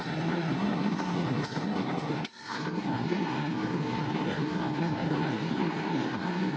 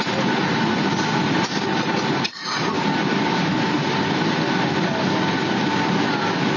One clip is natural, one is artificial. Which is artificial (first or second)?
first